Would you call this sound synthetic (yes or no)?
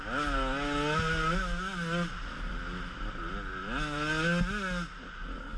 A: no